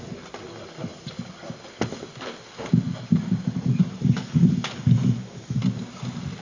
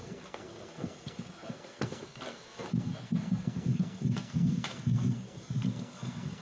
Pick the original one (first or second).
first